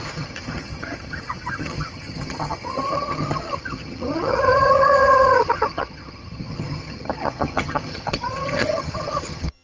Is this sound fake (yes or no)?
yes